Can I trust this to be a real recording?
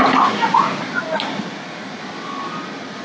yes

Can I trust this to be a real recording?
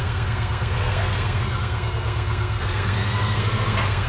no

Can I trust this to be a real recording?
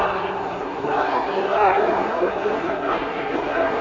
no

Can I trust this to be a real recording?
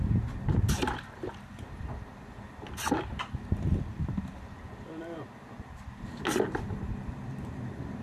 yes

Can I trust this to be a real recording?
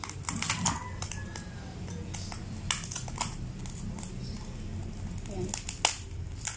yes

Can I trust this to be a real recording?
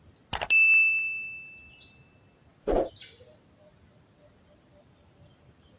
yes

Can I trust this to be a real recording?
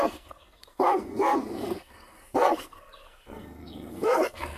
no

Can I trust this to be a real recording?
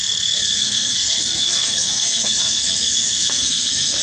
no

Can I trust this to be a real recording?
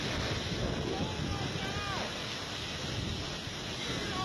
yes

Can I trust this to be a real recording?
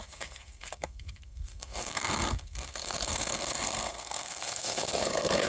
no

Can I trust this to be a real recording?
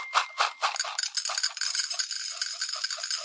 yes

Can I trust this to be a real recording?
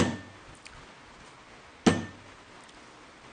yes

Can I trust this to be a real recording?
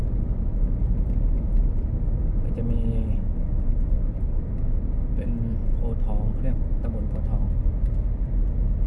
yes